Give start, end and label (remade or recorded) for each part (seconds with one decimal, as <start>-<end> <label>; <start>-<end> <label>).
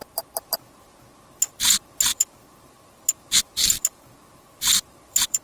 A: 0.0-2.1 recorded; 2.1-5.4 remade